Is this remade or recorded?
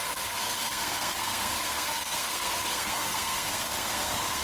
remade